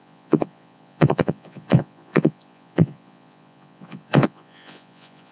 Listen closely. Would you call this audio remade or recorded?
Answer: remade